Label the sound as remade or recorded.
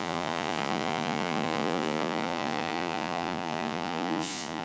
remade